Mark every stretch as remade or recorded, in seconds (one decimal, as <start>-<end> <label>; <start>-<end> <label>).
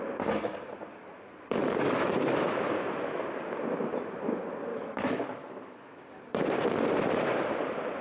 0.0-1.6 recorded; 1.6-2.4 remade; 2.4-4.7 recorded; 4.7-6.0 remade; 6.0-8.0 recorded